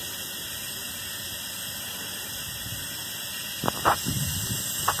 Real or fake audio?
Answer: real